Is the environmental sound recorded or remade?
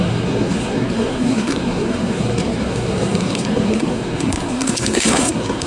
remade